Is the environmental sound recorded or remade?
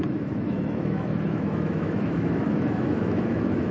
remade